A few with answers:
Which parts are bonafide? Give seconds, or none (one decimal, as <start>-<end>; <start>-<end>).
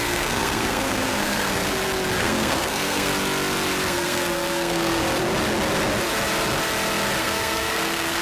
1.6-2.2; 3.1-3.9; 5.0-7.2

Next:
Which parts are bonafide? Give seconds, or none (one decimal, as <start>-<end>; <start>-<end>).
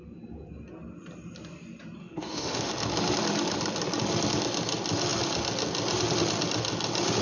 0.0-2.0; 2.7-7.2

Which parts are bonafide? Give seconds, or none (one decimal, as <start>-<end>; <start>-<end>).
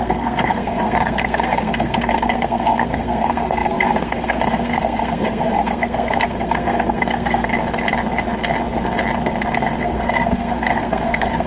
7.5-9.8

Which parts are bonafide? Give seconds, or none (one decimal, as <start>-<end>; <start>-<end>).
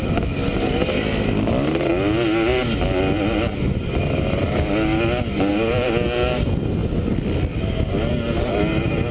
0.0-9.1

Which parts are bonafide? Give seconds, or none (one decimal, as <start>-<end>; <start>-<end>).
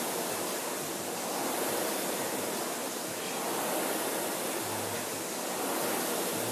0.0-2.8; 3.3-6.5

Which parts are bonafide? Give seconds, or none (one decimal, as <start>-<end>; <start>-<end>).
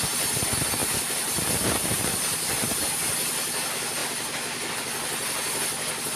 0.0-0.8; 2.8-6.2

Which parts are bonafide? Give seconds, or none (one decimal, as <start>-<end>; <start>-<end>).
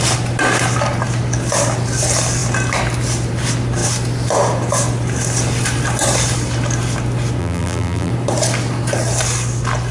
0.0-7.4; 8.1-9.9